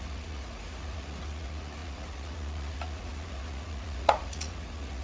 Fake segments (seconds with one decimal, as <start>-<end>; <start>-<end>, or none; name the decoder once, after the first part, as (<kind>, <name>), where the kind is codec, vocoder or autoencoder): 0.0-5.0 (vocoder, Vocos)